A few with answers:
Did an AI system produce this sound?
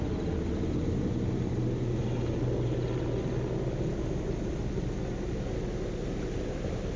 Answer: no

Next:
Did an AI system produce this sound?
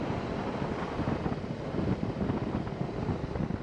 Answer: no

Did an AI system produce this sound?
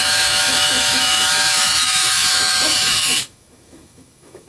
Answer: yes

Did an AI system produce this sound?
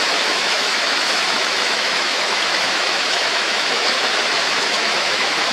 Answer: yes